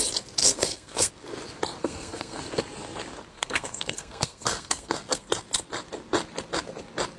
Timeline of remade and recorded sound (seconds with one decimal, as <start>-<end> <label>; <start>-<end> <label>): 0.0-0.4 recorded; 0.4-1.1 remade; 1.1-1.8 recorded; 1.8-2.4 remade; 2.4-3.3 recorded; 3.3-5.3 remade; 5.3-7.2 recorded